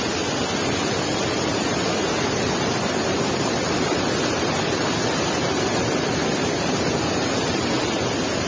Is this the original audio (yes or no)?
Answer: yes